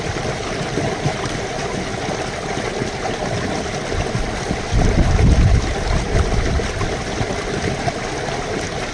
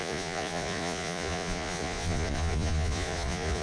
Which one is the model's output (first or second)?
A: second